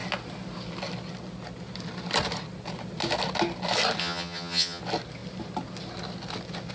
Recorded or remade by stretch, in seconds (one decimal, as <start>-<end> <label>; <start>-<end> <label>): 0.0-4.0 recorded; 4.0-4.8 remade; 4.8-6.7 recorded